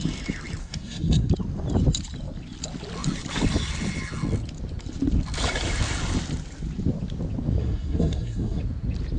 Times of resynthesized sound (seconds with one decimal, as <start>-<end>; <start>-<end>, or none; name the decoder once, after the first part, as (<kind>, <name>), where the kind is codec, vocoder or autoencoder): 0.6-1.3 (codec, SNAC); 7.6-8.6